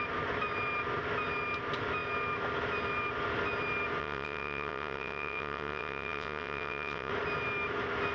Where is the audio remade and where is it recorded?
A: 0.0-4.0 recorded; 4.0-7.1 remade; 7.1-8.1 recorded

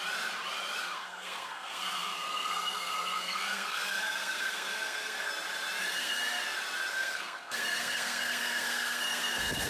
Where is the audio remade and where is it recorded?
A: 0.0-0.8 recorded; 0.8-5.3 remade; 5.3-5.8 recorded; 5.8-6.2 remade; 6.2-6.9 recorded; 6.9-9.7 remade

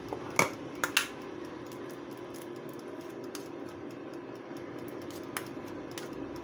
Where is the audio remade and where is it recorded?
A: 0.0-6.4 recorded

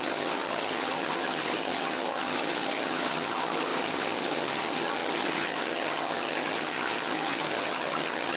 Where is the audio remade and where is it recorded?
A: 0.0-8.4 remade